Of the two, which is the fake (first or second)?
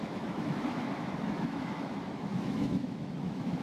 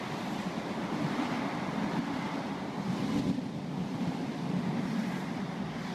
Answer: first